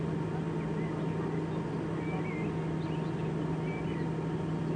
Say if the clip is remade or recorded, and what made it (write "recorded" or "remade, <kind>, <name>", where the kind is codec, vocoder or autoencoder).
recorded